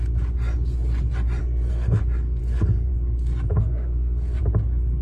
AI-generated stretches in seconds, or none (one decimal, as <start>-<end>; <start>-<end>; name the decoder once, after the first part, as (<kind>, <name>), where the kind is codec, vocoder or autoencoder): 1.4-2.0 (codec, SNAC); 2.4-2.9; 3.5-4.4